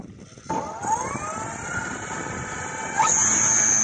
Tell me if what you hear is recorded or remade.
recorded